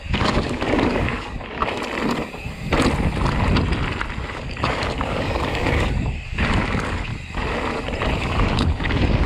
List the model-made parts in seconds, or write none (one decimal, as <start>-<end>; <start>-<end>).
0.0-1.6; 4.3-7.1; 8.2-9.3